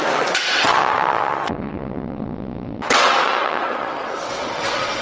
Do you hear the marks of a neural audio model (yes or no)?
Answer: yes